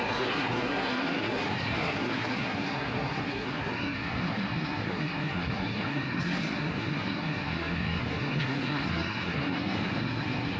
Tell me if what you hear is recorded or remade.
remade